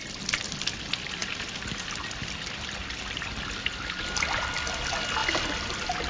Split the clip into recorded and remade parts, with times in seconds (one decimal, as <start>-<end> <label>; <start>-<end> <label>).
0.0-6.1 recorded